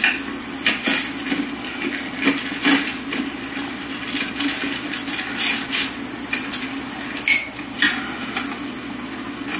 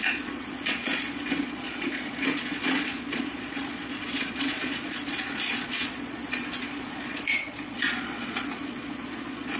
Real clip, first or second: first